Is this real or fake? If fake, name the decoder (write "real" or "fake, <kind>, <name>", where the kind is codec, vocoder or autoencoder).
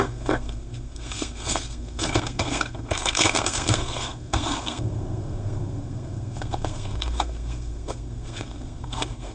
fake, codec, SNAC